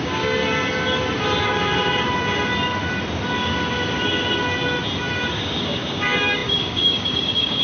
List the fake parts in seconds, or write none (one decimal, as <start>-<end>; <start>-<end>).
0.0-0.4; 5.0-7.6

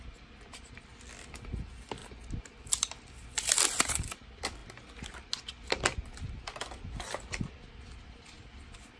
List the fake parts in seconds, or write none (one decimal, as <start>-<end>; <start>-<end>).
none

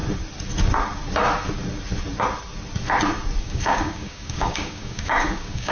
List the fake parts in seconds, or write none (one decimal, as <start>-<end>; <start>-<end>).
3.4-5.7

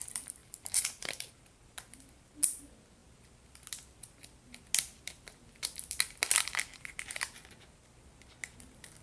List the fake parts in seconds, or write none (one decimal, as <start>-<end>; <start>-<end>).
0.4-1.3

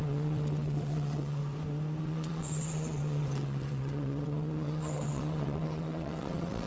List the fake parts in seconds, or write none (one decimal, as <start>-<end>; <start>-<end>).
0.0-1.4; 2.0-6.7

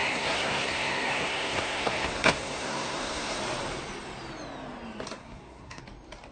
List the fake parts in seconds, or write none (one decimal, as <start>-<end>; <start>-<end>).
0.0-3.4; 5.2-5.8

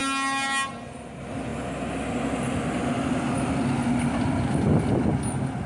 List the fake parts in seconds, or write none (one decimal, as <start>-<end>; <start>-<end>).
none